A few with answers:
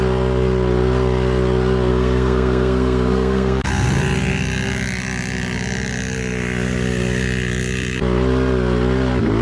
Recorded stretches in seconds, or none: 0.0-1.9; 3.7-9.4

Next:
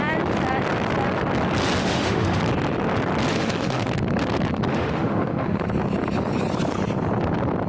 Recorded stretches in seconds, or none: 0.0-1.8; 2.4-3.3; 3.9-4.7; 5.6-7.7

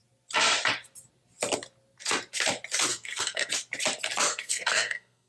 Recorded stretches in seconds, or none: 0.0-2.9; 3.5-4.3

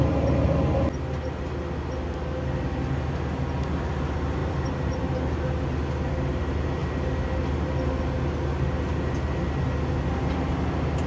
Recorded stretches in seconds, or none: 0.0-4.4; 5.4-11.1

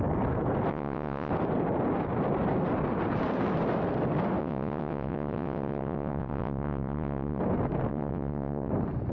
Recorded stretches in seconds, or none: 0.0-0.7; 1.3-4.4; 7.4-7.9; 8.7-9.1

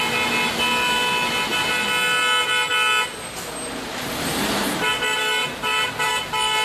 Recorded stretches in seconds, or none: 0.0-4.3; 4.9-5.4; 6.1-6.6

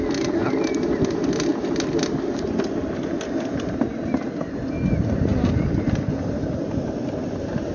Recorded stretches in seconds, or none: 0.0-7.7

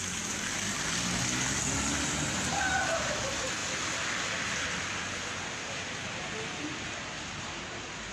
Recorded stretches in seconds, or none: 0.0-8.1